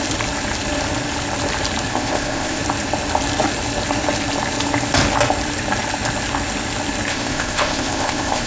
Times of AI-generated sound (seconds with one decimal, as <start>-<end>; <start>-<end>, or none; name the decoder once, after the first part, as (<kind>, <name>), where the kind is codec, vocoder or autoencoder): 1.9-2.6 (codec, ZipCodec); 7.1-8.5